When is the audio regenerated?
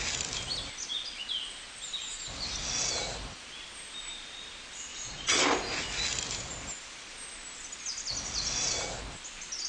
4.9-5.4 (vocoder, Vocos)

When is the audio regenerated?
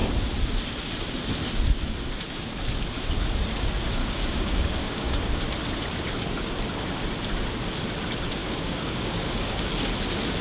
4.0-5.4 (codec, DAC); 8.4-9.7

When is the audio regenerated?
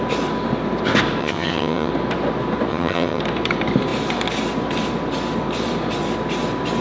1.2-1.9 (vocoder, HiFi-GAN); 2.7-3.2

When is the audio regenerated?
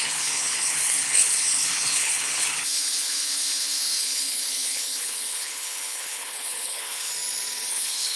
0.0-7.1 (codec, HILCodec); 7.7-8.2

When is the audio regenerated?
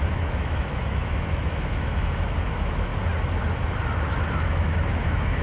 0.0-2.9 (autoencoder, DAC-VAE); 4.3-5.4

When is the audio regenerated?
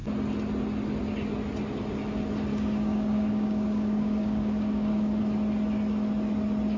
2.5-5.2 (codec, DAC)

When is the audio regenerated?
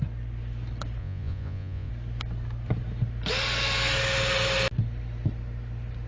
1.0-1.9 (vocoder, Vocos)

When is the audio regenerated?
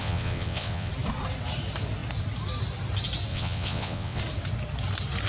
0.0-0.9 (vocoder, WaveNeXt); 3.3-4.2